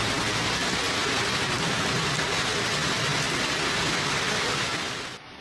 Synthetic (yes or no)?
no